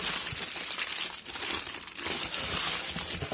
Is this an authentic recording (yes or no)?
yes